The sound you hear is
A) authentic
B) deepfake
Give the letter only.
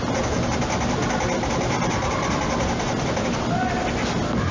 A